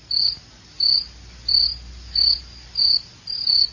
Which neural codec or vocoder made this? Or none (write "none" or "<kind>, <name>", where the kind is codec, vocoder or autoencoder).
none